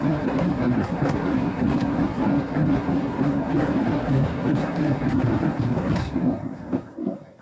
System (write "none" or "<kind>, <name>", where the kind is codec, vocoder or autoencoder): codec, SNAC